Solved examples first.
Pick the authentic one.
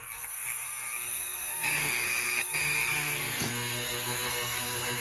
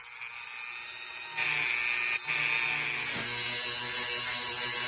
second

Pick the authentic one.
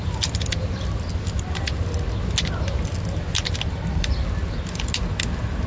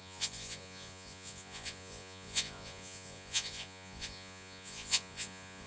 first